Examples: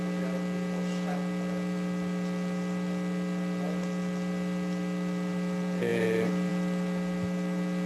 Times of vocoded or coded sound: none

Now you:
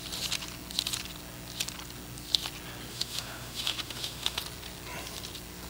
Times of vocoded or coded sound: 2.9-4.4 (autoencoder, DAC-VAE)

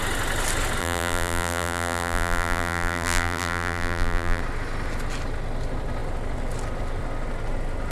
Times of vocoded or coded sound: 0.8-4.4 (vocoder, BigVGAN v2)

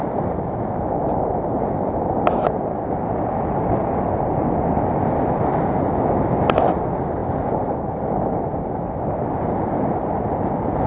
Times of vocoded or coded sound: none

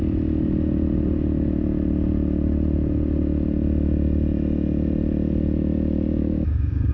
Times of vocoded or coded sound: 6.2-6.9 (codec, DAC)